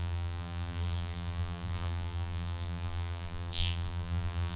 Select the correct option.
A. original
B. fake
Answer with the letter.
B